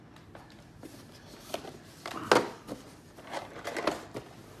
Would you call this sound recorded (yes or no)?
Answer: yes